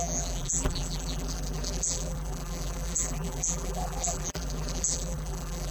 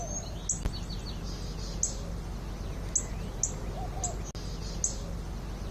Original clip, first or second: second